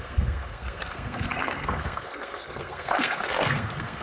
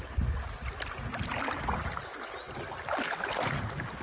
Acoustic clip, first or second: second